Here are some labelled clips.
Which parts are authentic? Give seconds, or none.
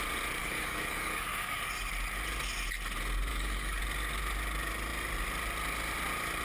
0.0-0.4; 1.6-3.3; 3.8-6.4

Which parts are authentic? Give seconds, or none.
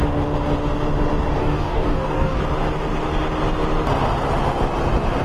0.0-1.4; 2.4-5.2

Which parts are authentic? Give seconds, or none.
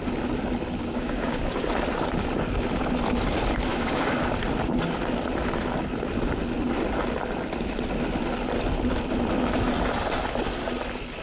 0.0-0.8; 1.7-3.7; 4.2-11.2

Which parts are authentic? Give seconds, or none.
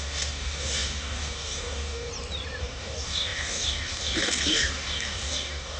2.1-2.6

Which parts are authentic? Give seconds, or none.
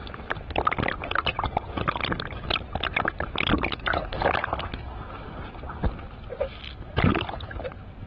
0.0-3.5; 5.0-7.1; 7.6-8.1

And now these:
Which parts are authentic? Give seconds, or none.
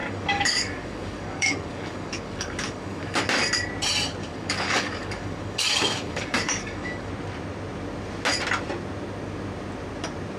3.2-4.2; 7.1-10.4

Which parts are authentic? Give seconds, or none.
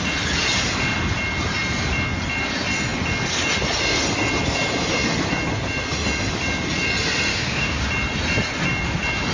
0.0-7.3; 7.9-9.3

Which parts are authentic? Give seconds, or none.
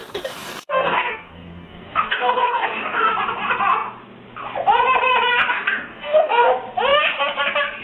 3.1-5.5; 6.5-7.8